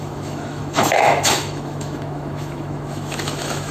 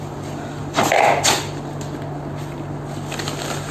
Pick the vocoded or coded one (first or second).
first